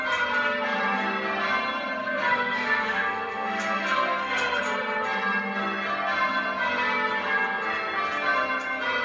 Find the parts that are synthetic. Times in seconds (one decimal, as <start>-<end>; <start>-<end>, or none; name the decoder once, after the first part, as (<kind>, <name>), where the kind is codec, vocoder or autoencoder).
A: 2.0-4.6 (codec, SNAC)